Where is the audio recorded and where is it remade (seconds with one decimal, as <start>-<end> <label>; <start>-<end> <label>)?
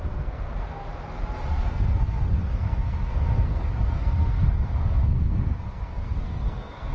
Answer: 0.0-0.8 remade; 0.8-1.5 recorded; 1.5-6.9 remade